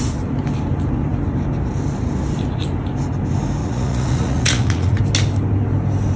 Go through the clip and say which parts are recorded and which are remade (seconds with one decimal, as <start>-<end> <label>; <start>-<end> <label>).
0.0-3.6 recorded; 3.6-5.0 remade; 5.0-6.2 recorded